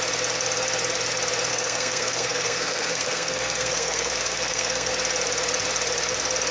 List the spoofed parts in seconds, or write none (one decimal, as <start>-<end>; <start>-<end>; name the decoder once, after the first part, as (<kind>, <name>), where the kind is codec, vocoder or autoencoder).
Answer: 1.5-4.9 (codec, SNAC)